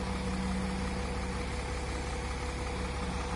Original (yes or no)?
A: yes